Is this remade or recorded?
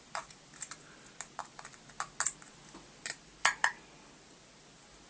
recorded